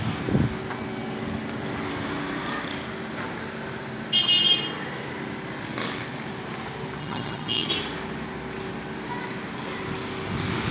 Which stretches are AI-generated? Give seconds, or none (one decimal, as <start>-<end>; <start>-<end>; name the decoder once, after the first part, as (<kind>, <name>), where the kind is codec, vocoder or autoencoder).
7.0-7.7 (vocoder, HiFi-GAN)